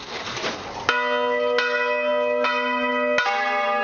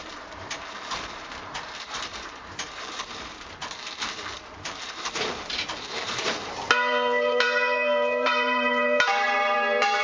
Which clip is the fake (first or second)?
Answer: second